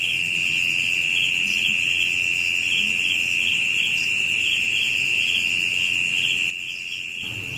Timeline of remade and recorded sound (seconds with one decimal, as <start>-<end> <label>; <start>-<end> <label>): 0.0-3.5 recorded; 3.5-5.2 remade; 5.2-7.6 recorded